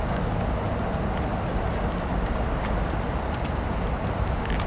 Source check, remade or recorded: recorded